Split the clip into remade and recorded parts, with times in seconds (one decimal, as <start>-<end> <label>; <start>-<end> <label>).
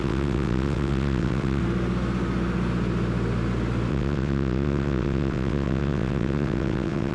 0.0-1.6 remade; 1.6-3.9 recorded; 3.9-7.1 remade